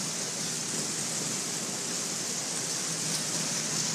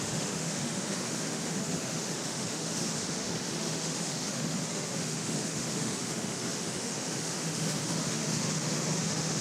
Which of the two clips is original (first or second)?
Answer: first